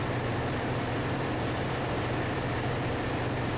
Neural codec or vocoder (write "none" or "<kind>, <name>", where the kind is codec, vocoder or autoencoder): none